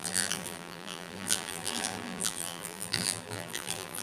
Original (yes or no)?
no